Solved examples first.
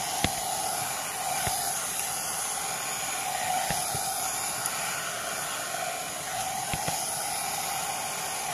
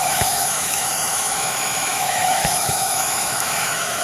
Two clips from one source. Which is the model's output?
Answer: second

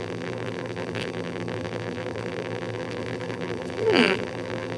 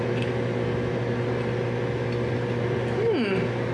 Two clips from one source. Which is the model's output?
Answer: first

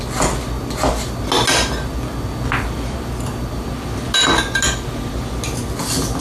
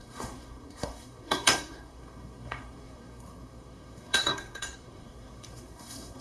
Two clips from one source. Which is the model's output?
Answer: second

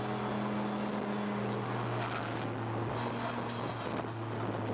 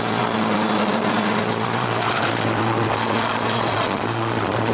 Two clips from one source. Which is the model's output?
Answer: second